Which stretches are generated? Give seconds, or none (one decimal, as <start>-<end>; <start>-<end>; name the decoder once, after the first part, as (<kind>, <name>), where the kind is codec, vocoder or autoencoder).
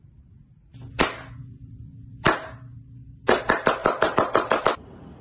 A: 2.1-3.2 (vocoder, BigVGAN v2); 3.8-4.6